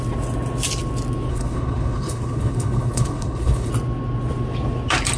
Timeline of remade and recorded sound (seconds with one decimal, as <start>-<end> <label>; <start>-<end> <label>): 0.0-1.3 recorded; 1.3-3.7 remade; 3.7-5.2 recorded